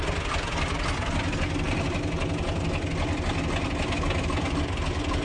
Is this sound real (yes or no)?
yes